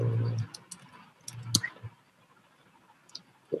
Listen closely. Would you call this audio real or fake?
real